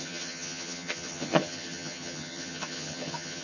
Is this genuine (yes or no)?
no